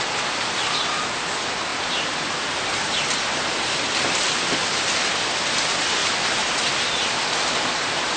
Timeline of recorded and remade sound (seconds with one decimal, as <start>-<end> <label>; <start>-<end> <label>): 0.0-8.2 recorded